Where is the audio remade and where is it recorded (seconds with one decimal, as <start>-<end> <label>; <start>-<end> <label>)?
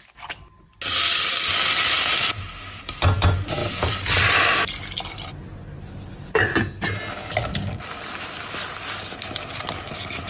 0.0-10.3 recorded